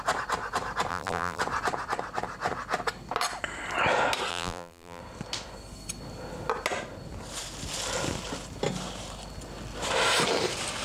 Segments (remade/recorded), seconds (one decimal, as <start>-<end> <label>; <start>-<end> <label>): 0.0-0.9 recorded; 0.9-1.4 remade; 1.4-4.3 recorded; 4.3-5.0 remade; 5.0-10.8 recorded